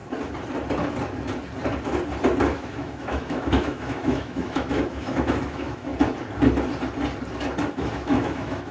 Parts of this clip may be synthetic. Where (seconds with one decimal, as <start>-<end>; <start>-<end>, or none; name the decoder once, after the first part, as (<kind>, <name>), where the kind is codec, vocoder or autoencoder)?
2.4-5.9 (autoencoder, DAC-VAE); 7.7-8.7